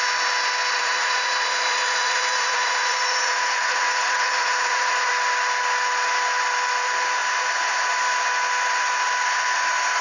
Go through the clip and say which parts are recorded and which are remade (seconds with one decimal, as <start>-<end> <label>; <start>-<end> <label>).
0.0-0.7 recorded; 0.7-5.1 remade; 5.1-10.0 recorded